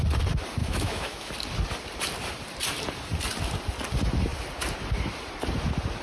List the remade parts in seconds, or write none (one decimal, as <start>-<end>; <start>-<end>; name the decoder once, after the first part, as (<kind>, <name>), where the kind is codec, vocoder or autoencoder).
0.6-1.3 (autoencoder, DAC-VAE)